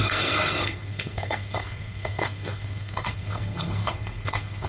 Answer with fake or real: fake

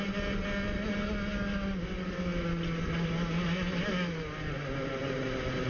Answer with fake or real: real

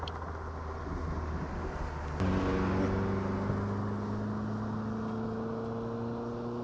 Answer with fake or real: real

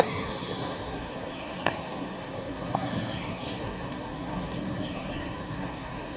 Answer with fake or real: fake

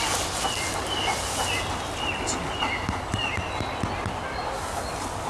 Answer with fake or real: real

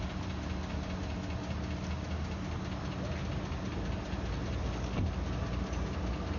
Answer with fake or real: real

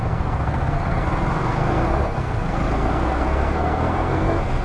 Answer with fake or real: fake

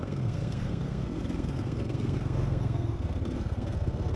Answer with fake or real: fake